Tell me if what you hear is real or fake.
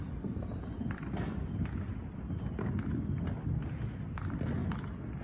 real